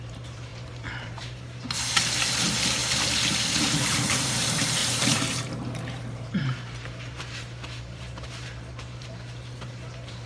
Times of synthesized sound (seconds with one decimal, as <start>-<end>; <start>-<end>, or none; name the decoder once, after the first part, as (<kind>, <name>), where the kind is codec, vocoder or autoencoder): 0.0-2.8 (vocoder, BigVGAN v2); 3.4-10.3